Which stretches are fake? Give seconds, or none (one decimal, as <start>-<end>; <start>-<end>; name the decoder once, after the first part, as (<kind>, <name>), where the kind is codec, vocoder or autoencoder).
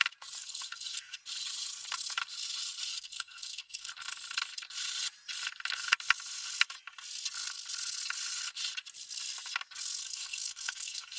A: 0.4-1.2 (codec, SNAC); 2.9-3.9; 10.0-11.2